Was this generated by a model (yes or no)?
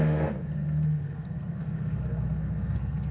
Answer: yes